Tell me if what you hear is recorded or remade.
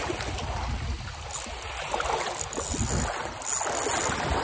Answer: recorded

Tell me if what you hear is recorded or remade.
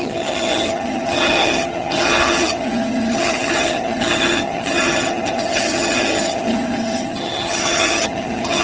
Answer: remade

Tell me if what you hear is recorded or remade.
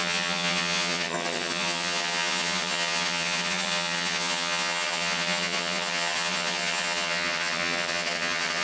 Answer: remade